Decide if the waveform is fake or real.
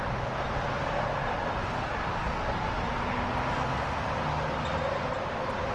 real